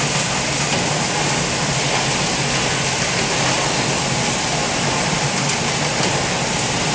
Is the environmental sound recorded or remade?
recorded